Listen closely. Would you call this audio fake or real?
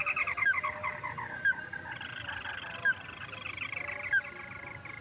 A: real